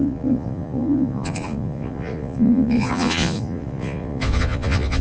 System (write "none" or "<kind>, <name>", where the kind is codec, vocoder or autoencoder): vocoder, Vocos